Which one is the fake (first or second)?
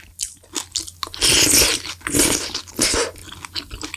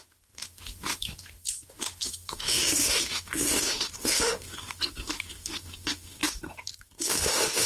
second